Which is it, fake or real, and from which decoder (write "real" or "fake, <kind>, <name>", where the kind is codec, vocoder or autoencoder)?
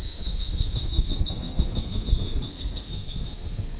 fake, codec, SNAC